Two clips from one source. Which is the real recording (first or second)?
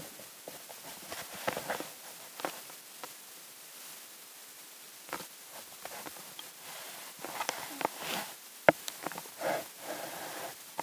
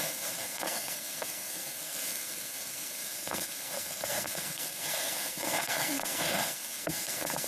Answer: first